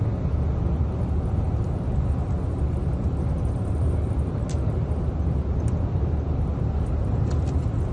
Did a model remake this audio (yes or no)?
no